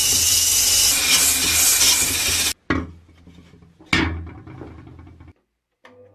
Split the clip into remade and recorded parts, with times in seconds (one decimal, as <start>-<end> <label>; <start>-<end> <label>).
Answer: 0.0-6.1 recorded